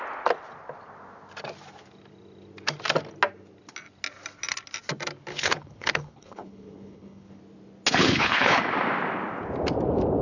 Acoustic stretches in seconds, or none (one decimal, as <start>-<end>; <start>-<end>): 0.0-5.3; 7.4-8.0; 8.6-10.2